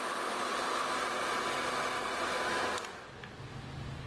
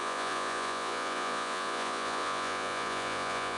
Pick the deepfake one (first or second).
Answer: second